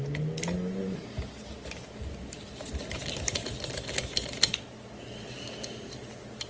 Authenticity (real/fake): real